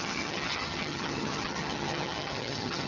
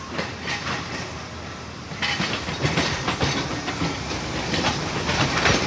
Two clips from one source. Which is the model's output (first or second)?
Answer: first